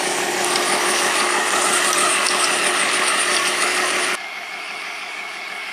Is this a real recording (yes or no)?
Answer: no